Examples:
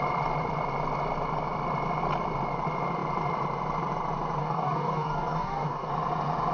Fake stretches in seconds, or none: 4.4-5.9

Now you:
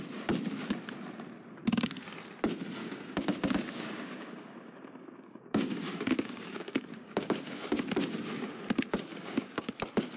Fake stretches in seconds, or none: 2.8-7.9; 9.1-9.7

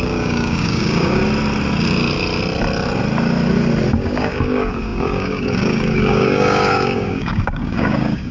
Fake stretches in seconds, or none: 0.0-1.2; 3.9-8.3

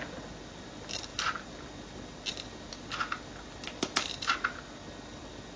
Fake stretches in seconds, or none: none